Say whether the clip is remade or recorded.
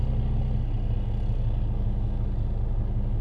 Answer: recorded